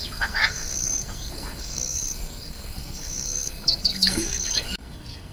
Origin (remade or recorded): remade